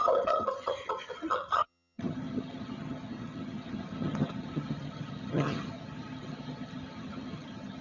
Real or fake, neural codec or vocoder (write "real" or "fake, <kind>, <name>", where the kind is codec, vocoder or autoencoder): fake, vocoder, HiFi-GAN